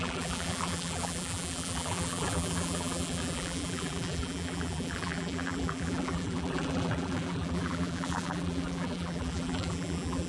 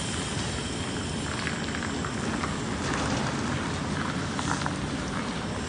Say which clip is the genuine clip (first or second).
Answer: second